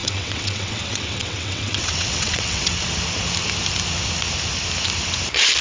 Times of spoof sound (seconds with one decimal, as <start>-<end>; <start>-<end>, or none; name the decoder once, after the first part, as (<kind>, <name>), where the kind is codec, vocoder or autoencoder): 0.0-2.8 (vocoder, WaveNeXt)